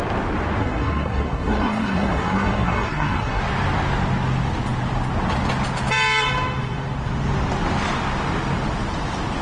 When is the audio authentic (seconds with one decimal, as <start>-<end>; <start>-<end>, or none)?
0.0-0.6; 3.4-9.4